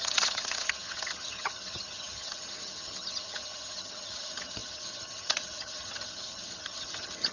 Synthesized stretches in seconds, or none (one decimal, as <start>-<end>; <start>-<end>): 0.0-7.3